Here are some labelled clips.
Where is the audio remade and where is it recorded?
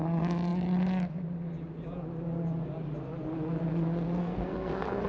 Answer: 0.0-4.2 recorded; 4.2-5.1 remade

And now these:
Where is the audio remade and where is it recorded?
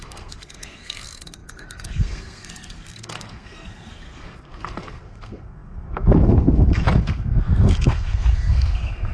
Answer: 0.0-9.1 remade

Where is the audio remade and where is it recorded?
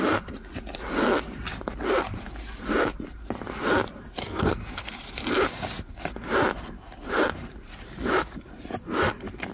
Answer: 0.0-4.2 recorded; 4.2-4.9 remade; 4.9-9.5 recorded